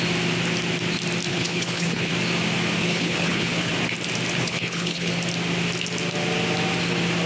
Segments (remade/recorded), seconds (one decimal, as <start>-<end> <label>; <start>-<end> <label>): 0.0-1.3 recorded; 1.3-2.1 remade; 2.1-2.8 recorded; 2.8-3.7 remade; 3.7-4.4 recorded; 4.4-5.1 remade; 5.1-7.3 recorded